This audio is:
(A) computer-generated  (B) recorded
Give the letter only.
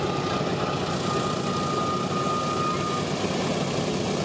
B